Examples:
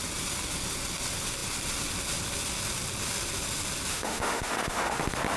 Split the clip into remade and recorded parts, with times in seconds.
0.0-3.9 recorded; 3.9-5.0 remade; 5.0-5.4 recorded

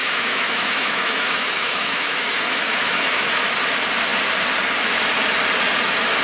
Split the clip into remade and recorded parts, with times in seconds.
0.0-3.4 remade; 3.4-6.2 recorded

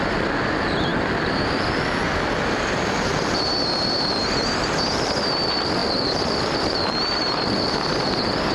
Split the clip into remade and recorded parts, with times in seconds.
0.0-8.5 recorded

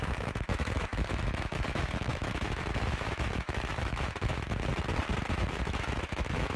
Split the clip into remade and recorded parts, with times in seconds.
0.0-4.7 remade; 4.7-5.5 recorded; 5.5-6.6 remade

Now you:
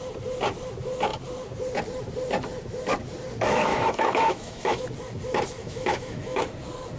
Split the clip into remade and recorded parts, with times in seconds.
0.0-3.7 recorded; 3.7-4.8 remade; 4.8-5.6 recorded; 5.6-6.4 remade; 6.4-7.0 recorded

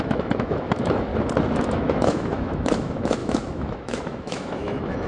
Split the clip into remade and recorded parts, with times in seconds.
0.0-1.1 remade; 1.1-1.6 recorded; 1.6-5.1 remade

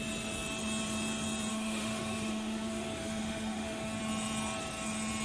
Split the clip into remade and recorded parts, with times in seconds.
0.0-1.5 recorded; 1.5-4.0 remade; 4.0-5.2 recorded